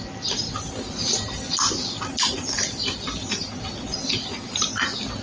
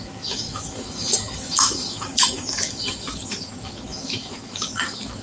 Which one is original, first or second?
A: first